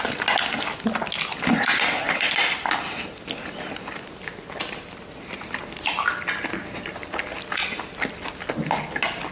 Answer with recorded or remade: recorded